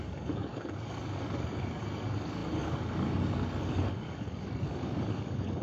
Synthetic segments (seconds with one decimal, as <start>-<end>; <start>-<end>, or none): 0.0-5.6